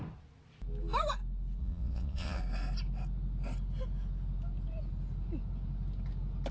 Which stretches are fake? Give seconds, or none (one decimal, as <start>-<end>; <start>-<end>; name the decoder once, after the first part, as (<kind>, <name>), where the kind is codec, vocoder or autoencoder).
1.6-2.4 (vocoder, Vocos)